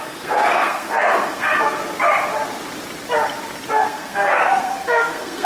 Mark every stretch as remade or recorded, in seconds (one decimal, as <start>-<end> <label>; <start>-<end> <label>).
0.0-1.8 remade; 1.8-3.7 recorded; 3.7-5.4 remade